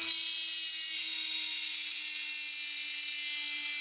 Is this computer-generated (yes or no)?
no